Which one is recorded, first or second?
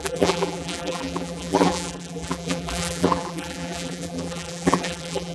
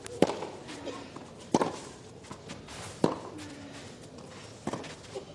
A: second